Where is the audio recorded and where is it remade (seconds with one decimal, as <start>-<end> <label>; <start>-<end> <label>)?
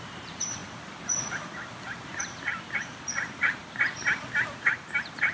0.0-0.6 remade; 0.6-2.7 recorded; 2.7-3.6 remade; 3.6-4.4 recorded; 4.4-5.3 remade